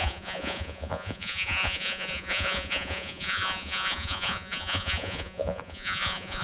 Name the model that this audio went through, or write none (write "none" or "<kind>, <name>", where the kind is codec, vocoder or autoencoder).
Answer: vocoder, Vocos